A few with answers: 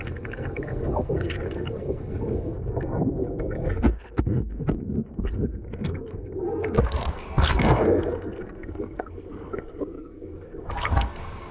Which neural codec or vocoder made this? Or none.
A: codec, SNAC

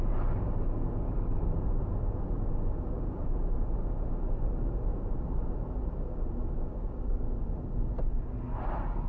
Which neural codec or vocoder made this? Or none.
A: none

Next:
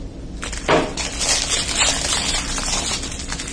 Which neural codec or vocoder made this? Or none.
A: none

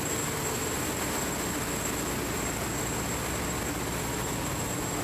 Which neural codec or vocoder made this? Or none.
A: none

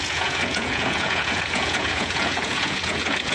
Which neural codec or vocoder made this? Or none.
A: vocoder, Vocos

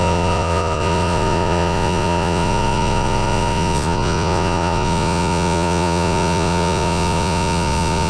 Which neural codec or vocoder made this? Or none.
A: vocoder, Vocos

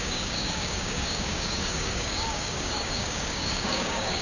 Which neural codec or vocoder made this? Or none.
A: codec, DAC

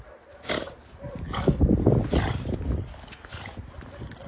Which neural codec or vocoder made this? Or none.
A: none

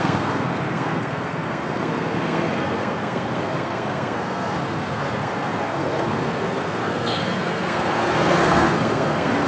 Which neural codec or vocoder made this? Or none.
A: codec, SNAC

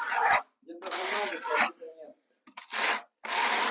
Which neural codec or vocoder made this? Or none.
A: vocoder, BigVGAN v2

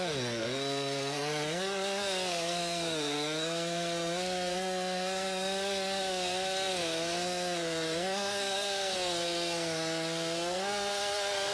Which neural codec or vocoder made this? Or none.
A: codec, SNAC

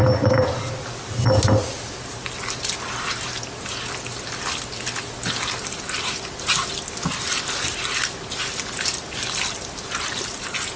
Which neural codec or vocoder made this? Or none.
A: none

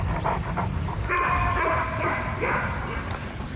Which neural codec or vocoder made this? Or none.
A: vocoder, BigVGAN v2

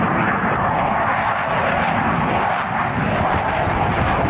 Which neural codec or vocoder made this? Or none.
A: none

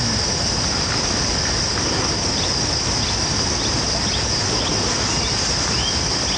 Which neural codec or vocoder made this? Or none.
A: none